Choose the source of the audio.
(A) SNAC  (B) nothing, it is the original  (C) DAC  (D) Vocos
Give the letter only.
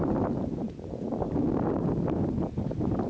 B